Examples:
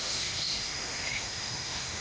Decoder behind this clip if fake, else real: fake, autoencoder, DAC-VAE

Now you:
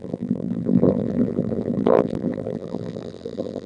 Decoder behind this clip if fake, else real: fake, vocoder, BigVGAN v2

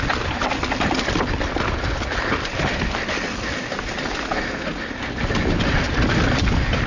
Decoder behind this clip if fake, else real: real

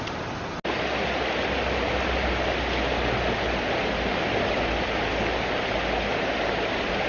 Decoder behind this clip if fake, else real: real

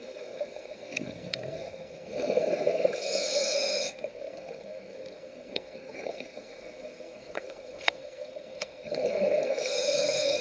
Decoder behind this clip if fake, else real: fake, codec, SNAC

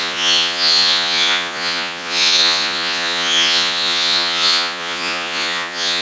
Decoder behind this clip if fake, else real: fake, vocoder, Vocos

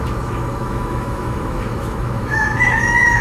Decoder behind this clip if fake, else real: fake, autoencoder, DAC-VAE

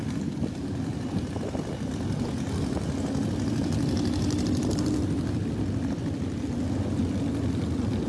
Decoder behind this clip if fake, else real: real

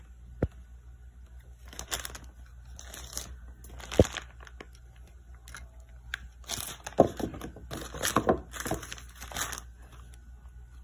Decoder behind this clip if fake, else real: real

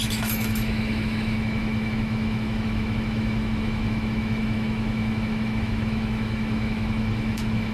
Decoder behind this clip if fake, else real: fake, autoencoder, DAC-VAE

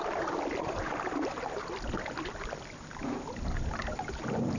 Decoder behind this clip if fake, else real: real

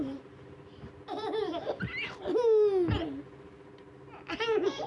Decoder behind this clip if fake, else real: real